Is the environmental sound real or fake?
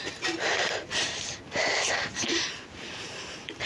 fake